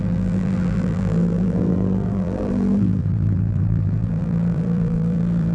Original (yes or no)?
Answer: no